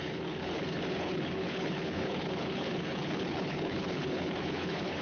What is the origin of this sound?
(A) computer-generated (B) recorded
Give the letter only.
A